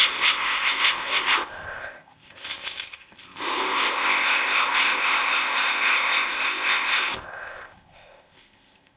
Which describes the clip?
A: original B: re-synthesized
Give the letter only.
B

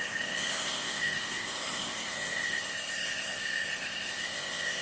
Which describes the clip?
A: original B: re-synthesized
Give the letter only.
B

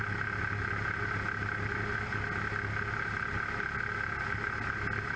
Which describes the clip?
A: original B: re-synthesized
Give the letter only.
A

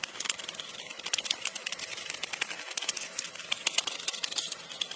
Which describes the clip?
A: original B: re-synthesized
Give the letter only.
A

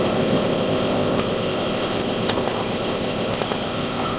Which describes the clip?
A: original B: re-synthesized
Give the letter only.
B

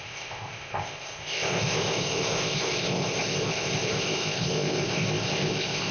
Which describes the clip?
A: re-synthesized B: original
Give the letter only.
A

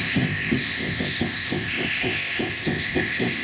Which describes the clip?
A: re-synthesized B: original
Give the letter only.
A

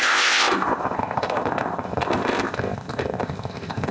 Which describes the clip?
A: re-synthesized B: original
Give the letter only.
A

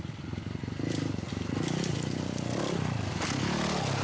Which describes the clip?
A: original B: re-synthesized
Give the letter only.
A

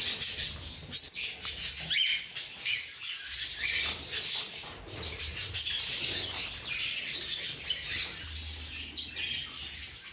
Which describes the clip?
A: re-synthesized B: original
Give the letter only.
B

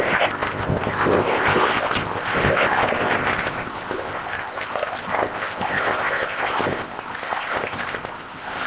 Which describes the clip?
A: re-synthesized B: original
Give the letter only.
A